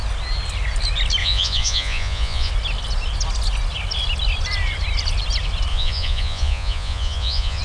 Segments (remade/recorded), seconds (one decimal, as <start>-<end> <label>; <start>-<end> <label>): 0.0-1.2 recorded; 1.2-2.5 remade; 2.5-5.7 recorded; 5.7-7.6 remade

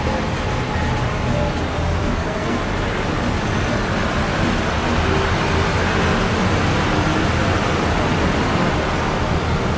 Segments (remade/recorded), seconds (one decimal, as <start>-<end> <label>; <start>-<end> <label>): 0.0-2.0 recorded; 2.0-2.6 remade; 2.6-9.8 recorded

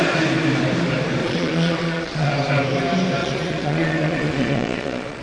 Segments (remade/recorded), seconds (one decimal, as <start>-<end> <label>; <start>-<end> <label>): 0.0-1.2 recorded; 1.2-2.3 remade; 2.3-3.2 recorded; 3.2-5.2 remade